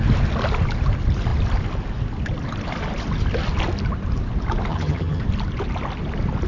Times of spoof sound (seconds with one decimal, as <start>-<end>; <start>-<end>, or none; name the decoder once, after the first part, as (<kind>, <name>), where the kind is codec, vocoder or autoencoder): 4.7-5.2 (vocoder, HiFi-GAN)